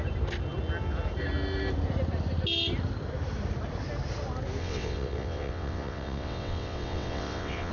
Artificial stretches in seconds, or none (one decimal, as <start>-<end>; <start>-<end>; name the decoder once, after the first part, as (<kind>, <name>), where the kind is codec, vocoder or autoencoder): 4.6-7.7 (vocoder, WaveNeXt)